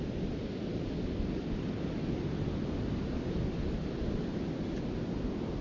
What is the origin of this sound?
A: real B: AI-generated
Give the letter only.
A